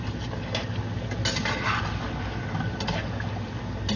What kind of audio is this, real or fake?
real